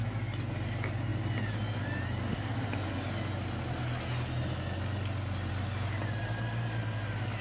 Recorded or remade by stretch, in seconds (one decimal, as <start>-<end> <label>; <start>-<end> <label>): 0.0-7.4 recorded